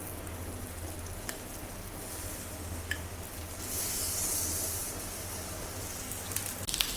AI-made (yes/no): no